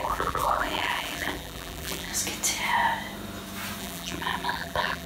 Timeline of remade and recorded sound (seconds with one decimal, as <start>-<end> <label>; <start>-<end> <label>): 0.0-2.1 remade; 2.1-3.8 recorded; 3.8-5.1 remade